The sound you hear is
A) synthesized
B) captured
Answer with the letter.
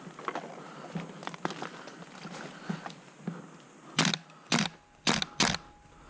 B